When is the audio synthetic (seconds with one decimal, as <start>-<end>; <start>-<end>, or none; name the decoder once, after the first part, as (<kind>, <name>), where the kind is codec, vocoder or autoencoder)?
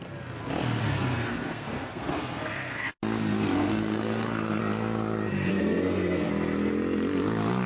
0.8-2.9 (codec, SNAC); 3.4-4.6; 5.5-6.3